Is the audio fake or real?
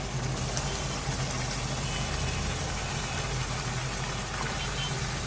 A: real